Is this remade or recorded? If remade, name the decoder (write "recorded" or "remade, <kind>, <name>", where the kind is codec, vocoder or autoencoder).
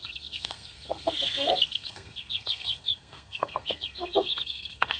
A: remade, codec, SNAC